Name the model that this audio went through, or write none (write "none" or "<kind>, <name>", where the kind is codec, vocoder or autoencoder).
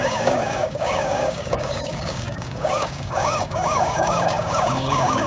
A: codec, DAC